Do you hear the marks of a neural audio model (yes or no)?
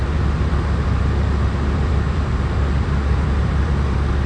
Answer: yes